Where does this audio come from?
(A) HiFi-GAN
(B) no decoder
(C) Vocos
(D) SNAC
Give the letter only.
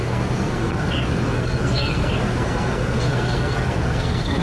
D